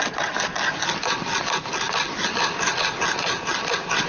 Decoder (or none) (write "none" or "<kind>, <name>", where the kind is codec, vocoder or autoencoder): none